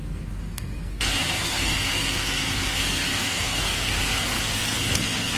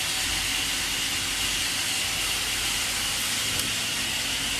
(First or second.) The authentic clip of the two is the second